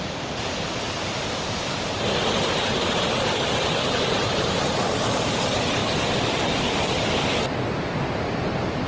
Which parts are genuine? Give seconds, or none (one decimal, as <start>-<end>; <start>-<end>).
0.0-8.9